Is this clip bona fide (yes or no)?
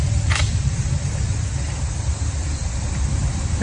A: yes